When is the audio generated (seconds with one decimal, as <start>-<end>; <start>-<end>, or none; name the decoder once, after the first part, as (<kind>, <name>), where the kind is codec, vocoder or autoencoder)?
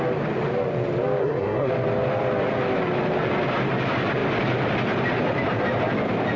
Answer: 1.2-1.7 (codec, SNAC)